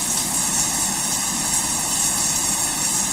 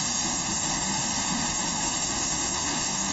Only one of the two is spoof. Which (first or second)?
second